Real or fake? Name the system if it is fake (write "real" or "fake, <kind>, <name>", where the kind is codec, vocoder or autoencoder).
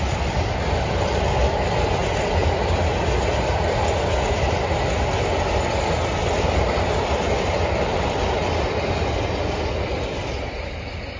real